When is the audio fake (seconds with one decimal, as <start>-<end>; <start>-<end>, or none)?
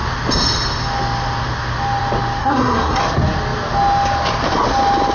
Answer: 2.4-3.0